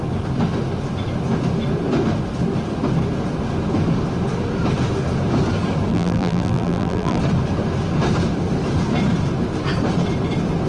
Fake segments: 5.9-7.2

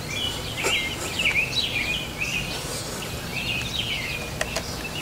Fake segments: none

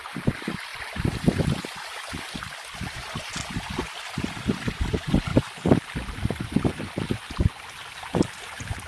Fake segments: 0.7-2.6; 3.8-4.8; 5.3-8.4

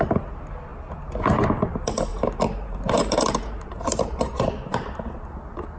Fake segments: 2.1-5.3

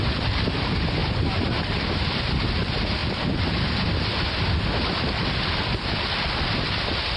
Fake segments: 1.0-2.4